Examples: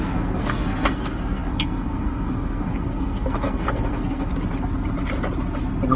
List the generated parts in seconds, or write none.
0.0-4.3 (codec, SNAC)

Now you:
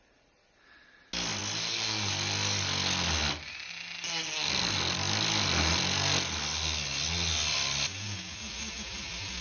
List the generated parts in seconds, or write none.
none

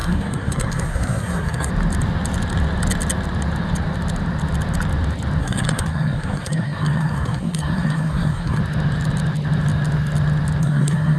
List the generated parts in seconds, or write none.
0.0-1.7 (codec, SNAC); 5.4-8.6; 10.6-11.2

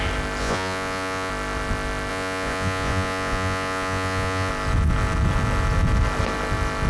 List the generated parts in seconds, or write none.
0.4-1.3 (vocoder, Vocos); 2.1-4.5

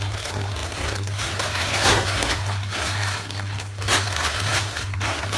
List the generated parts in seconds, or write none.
0.0-5.4 (codec, SNAC)

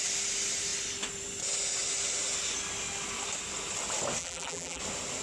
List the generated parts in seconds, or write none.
4.2-4.8 (vocoder, BigVGAN v2)

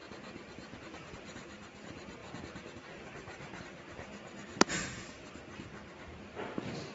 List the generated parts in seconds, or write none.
1.1-2.2 (vocoder, BigVGAN v2); 3.6-4.8; 6.0-6.9